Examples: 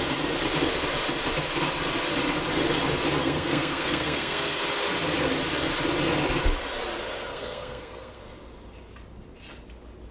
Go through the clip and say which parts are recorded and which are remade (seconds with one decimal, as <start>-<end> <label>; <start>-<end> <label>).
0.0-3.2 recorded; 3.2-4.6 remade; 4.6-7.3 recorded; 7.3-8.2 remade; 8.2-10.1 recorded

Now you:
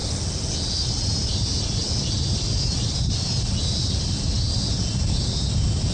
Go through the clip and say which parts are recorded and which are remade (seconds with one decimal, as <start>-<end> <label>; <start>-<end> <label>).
0.0-5.9 recorded

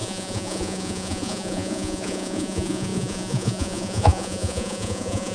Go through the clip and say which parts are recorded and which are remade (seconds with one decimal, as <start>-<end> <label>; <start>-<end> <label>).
0.0-5.3 remade

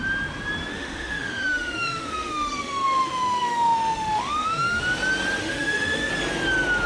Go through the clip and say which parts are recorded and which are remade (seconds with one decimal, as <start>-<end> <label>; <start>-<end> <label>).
0.0-0.7 recorded; 0.7-4.8 remade; 4.8-5.4 recorded; 5.4-6.1 remade; 6.1-6.9 recorded

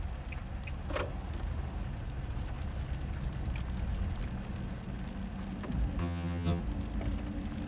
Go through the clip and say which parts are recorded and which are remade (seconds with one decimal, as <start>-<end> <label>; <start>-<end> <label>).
0.0-6.0 recorded; 6.0-6.6 remade; 6.6-7.7 recorded

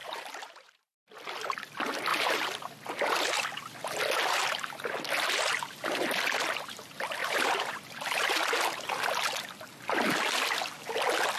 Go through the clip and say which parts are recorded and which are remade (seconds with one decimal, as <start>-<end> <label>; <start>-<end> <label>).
0.0-1.0 remade; 1.0-2.1 recorded; 2.1-2.7 remade; 2.7-7.2 recorded; 7.2-7.8 remade; 7.8-11.4 recorded

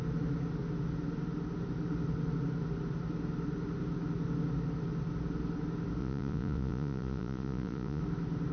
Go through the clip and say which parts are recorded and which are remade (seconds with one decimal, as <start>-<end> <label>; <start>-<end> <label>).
0.0-6.0 recorded; 6.0-8.0 remade; 8.0-8.5 recorded